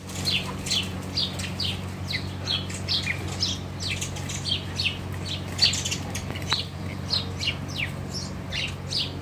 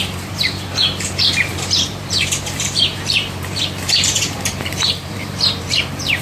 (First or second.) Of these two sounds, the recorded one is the first